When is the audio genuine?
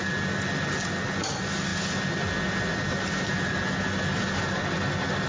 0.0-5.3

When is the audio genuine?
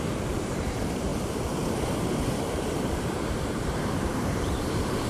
1.1-2.3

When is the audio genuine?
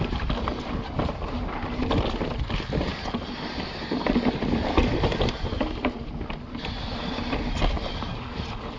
0.0-8.8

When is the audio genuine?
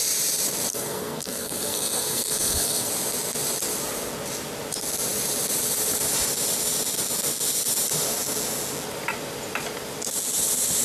0.0-0.7; 2.9-10.8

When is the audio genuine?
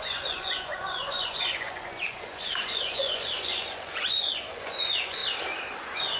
5.2-5.8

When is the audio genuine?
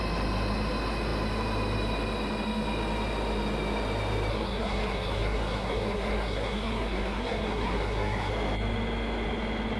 0.0-4.3; 8.3-9.8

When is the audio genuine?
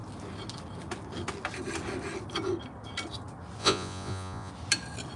0.0-3.6; 4.5-5.2